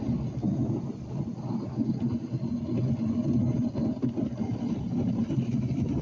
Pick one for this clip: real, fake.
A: real